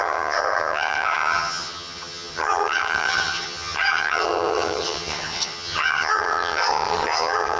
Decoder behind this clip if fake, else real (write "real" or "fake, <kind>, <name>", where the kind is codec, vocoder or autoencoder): fake, vocoder, HiFi-GAN